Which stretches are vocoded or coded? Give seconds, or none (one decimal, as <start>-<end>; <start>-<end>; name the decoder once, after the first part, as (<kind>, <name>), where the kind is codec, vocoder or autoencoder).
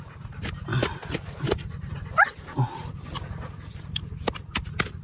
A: none